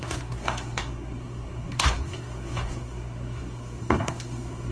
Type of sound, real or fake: fake